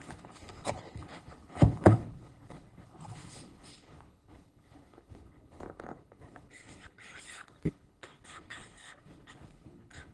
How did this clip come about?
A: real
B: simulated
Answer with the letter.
B